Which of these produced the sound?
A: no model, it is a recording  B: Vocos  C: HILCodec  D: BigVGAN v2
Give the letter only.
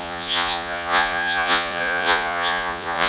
B